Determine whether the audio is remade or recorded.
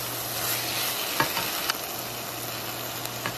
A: recorded